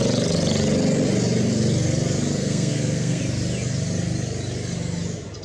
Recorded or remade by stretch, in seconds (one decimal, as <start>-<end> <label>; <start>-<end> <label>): 0.0-2.4 recorded; 2.4-3.2 remade; 3.2-5.4 recorded